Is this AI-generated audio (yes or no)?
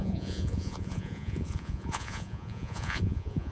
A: yes